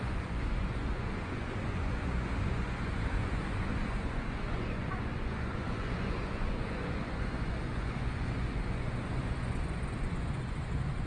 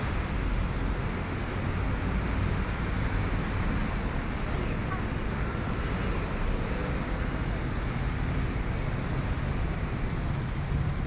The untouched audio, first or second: second